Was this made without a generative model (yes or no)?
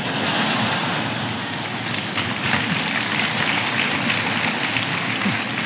yes